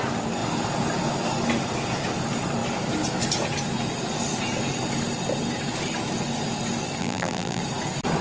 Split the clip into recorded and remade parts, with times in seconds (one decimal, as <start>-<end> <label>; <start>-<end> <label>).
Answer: 0.0-7.0 recorded; 7.0-7.6 remade; 7.6-8.2 recorded